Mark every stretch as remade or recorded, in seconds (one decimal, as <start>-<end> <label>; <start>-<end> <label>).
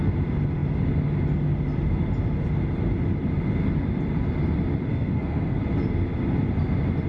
0.0-4.9 recorded; 4.9-5.6 remade; 5.6-7.1 recorded